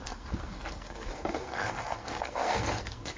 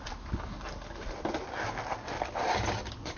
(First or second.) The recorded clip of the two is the second